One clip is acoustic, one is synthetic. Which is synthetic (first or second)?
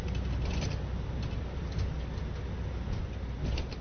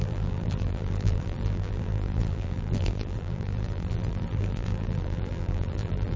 second